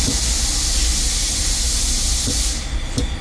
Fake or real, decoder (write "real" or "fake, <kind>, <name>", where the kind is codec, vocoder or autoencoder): real